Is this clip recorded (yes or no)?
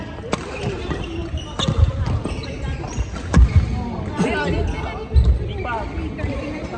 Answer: yes